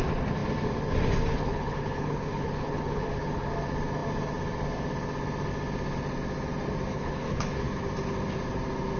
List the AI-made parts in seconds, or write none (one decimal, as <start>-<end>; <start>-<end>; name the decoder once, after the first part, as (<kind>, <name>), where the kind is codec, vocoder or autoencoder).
1.3-3.5 (codec, HILCodec); 6.9-7.7